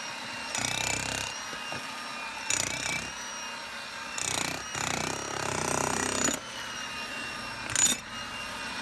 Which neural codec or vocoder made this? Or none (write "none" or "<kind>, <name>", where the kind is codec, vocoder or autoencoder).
none